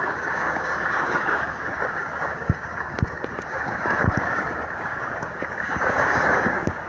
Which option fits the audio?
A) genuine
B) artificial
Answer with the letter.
B